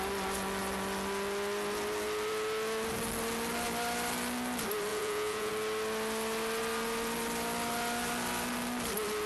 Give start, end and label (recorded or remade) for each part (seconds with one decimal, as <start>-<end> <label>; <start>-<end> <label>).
0.0-4.9 recorded; 4.9-5.5 remade; 5.5-9.3 recorded